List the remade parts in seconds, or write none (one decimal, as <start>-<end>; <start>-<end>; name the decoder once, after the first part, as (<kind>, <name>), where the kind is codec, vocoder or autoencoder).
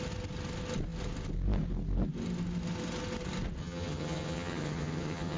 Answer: 3.6-5.4 (vocoder, HiFi-GAN)